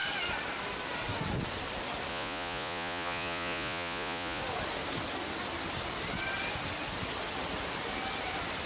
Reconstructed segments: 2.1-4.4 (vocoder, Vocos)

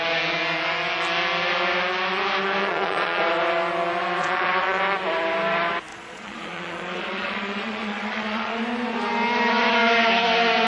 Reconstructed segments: 2.6-3.2 (vocoder, Vocos); 4.2-4.8; 5.9-8.6

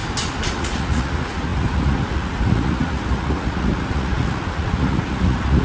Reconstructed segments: 0.5-5.6 (vocoder, Vocos)

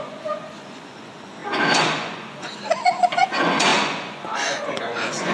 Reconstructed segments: 0.0-5.3 (vocoder, Vocos)

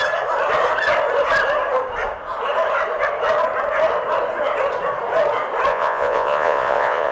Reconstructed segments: 5.7-7.1 (vocoder, Vocos)

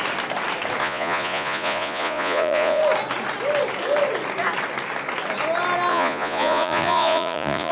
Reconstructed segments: 0.8-2.8 (vocoder, Vocos); 5.9-7.7

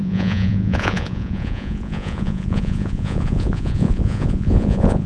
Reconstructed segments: 0.0-5.1 (vocoder, Vocos)